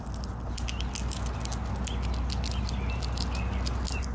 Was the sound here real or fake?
real